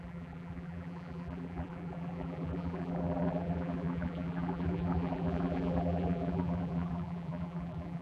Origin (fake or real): fake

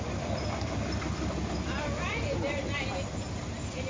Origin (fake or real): fake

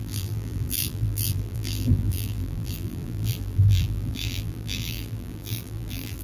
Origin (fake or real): fake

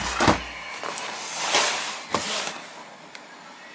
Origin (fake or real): real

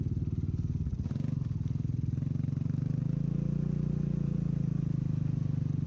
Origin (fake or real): real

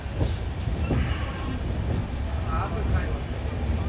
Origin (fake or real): real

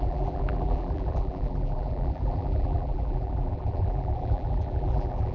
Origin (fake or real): fake